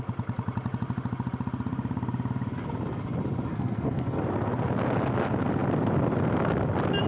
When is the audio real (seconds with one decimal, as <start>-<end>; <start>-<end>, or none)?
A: 0.0-3.5; 4.2-7.1